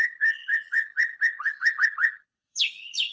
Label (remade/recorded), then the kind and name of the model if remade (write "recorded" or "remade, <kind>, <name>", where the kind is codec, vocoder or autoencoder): remade, codec, HILCodec